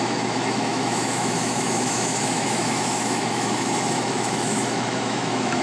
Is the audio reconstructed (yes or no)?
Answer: yes